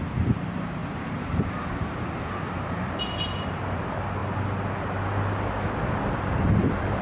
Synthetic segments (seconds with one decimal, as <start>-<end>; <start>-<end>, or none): 0.0-4.2; 6.1-7.0